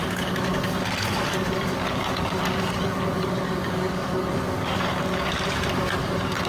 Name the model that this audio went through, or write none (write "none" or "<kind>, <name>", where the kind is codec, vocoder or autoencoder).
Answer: codec, DAC